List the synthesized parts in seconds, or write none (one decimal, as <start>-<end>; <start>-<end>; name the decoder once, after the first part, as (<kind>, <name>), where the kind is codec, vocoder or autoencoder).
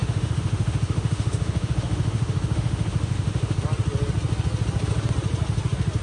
0.0-3.6 (autoencoder, DAC-VAE)